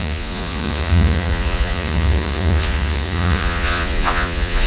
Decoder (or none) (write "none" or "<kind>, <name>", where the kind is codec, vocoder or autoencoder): vocoder, Vocos